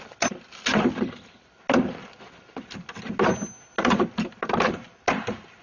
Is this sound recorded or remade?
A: recorded